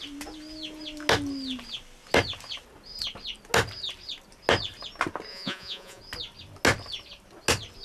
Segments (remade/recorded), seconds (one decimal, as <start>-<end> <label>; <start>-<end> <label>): 0.0-5.3 recorded; 5.3-6.0 remade; 6.0-7.8 recorded